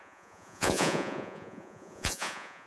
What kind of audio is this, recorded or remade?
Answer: remade